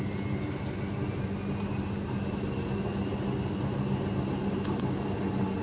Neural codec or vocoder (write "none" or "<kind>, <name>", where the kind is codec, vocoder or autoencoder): none